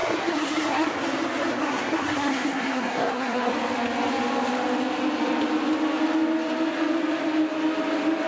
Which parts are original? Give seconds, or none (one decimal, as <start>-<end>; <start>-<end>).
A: 0.9-1.5; 3.5-8.3